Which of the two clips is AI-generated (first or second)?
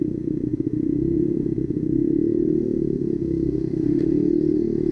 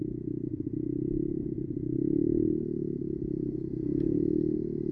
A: first